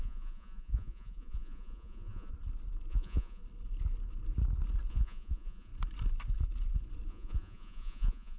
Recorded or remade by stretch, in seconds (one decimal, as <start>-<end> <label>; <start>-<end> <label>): 0.0-2.3 remade; 2.3-2.9 recorded; 2.9-3.4 remade; 3.4-4.9 recorded; 4.9-5.7 remade; 5.7-7.1 recorded; 7.1-8.4 remade